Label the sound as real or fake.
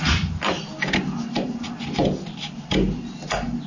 real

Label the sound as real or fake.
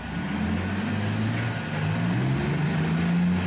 real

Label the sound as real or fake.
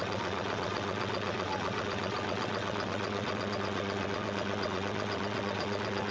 fake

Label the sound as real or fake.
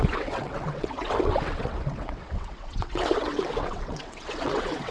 fake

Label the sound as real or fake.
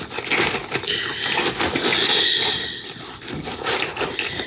real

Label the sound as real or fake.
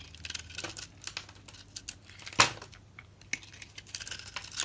real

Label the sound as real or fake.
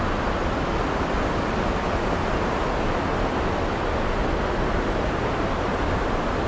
real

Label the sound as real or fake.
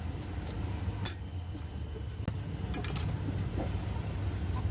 real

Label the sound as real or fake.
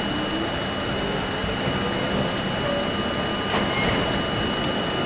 real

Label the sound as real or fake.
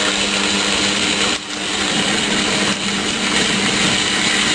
real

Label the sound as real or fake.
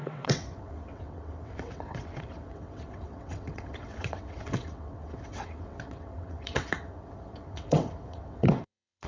fake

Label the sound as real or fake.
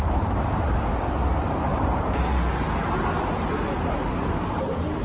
real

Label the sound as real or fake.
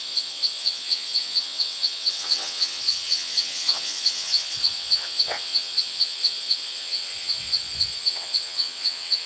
fake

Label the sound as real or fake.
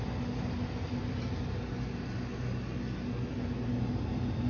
real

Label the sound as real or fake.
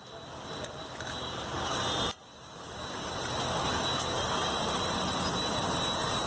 real